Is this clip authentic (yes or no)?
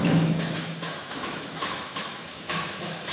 no